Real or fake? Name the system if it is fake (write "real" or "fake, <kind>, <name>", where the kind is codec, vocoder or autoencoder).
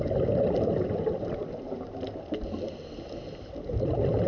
real